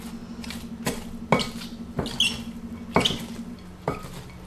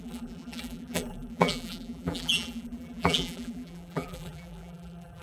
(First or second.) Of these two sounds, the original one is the first